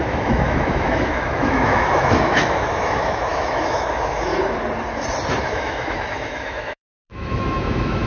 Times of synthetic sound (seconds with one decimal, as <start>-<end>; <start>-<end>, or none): 0.0-4.3; 5.4-8.1